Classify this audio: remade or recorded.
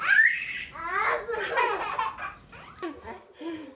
recorded